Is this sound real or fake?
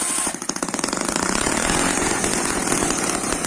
fake